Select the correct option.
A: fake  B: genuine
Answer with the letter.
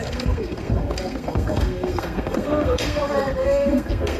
A